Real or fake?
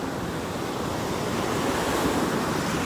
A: real